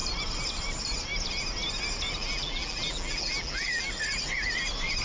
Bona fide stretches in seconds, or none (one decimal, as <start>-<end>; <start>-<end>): 0.0-2.2; 3.9-5.0